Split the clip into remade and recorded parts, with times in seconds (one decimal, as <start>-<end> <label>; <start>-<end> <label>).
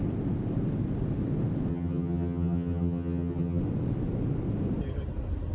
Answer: 0.0-1.7 recorded; 1.7-3.6 remade; 3.6-5.5 recorded